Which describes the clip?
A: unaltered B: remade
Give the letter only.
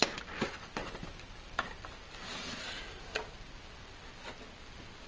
A